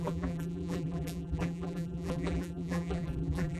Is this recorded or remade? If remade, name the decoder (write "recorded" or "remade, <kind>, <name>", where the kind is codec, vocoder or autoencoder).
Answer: remade, vocoder, BigVGAN v2